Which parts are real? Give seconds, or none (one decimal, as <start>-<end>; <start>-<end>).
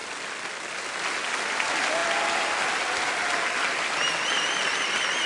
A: 0.0-5.3